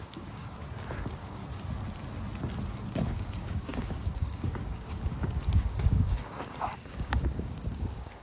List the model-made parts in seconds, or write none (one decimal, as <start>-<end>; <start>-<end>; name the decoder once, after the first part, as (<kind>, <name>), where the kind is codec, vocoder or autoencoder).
0.0-1.4 (codec, DAC); 2.9-8.2